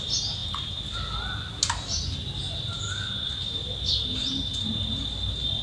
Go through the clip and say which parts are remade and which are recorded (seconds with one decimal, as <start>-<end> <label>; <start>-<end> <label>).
0.0-5.6 recorded